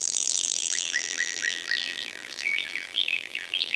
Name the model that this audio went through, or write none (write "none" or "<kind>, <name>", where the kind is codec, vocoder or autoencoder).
vocoder, BigVGAN v2